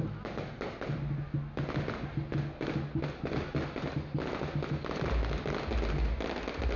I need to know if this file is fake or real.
real